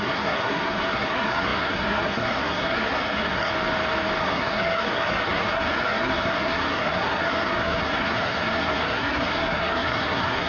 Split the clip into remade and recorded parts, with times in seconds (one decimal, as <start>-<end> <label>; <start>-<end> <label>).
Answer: 0.0-3.5 remade; 3.5-4.2 recorded; 4.2-10.5 remade